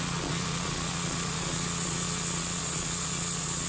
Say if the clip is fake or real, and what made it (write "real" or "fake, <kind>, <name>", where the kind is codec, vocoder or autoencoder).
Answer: fake, vocoder, Vocos